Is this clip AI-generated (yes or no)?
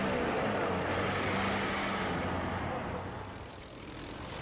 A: no